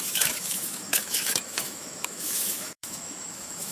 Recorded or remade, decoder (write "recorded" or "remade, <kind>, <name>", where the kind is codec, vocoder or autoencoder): remade, autoencoder, DAC-VAE